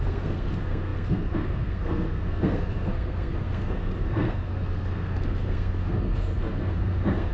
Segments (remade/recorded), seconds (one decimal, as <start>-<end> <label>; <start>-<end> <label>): 0.0-7.3 remade